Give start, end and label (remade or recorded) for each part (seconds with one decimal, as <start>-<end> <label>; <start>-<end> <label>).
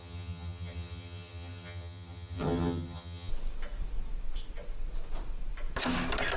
0.0-3.3 remade; 3.3-6.4 recorded